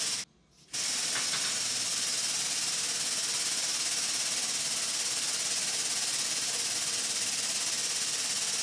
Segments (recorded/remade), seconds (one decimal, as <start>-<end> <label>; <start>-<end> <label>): 0.0-8.6 recorded

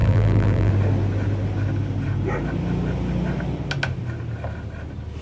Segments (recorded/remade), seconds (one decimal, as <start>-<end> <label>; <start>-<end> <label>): 0.0-0.7 remade; 0.7-5.2 recorded

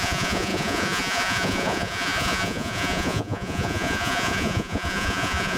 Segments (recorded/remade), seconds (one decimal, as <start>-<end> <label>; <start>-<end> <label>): 0.0-5.6 remade

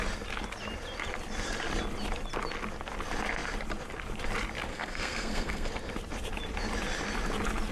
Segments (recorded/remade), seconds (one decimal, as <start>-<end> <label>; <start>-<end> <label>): 0.0-4.7 recorded; 4.7-5.7 remade; 5.7-7.7 recorded

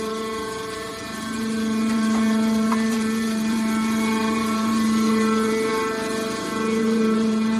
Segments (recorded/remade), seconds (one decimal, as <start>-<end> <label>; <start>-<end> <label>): 0.0-5.7 remade; 5.7-6.8 recorded; 6.8-7.6 remade

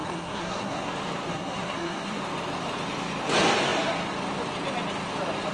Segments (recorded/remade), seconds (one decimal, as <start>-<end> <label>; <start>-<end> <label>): 0.0-0.9 remade; 0.9-1.3 recorded; 1.3-2.2 remade; 2.2-5.5 recorded

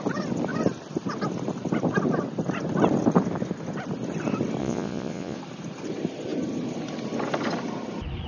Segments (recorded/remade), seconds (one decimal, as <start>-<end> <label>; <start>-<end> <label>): 0.0-4.6 recorded; 4.6-5.4 remade; 5.4-8.3 recorded

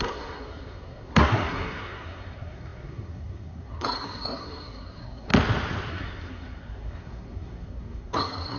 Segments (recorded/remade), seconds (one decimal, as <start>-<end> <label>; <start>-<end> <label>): 0.0-5.3 remade; 5.3-5.9 recorded; 5.9-8.6 remade